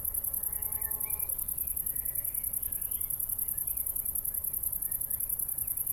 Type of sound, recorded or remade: recorded